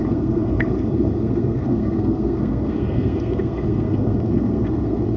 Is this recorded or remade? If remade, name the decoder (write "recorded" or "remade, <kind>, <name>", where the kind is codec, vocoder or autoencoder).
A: remade, codec, SNAC